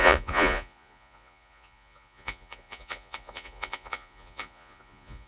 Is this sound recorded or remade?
remade